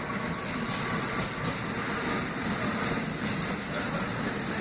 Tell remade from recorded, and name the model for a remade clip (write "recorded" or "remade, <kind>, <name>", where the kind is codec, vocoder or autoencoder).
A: recorded